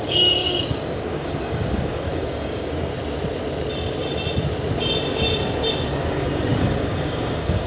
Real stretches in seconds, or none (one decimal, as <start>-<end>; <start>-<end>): 2.9-5.9